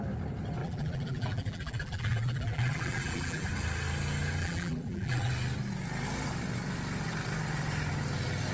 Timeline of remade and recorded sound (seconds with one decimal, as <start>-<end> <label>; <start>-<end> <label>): 0.0-0.6 recorded; 0.6-3.5 remade; 3.5-4.4 recorded; 4.4-5.3 remade; 5.3-8.5 recorded

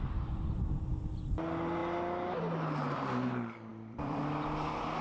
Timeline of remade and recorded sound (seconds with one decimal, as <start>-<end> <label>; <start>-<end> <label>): 0.0-3.7 recorded; 3.7-4.2 remade; 4.2-5.0 recorded

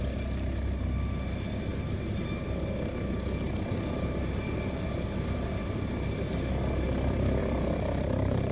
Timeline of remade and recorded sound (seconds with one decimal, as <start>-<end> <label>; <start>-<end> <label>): 0.0-7.4 recorded; 7.4-8.5 remade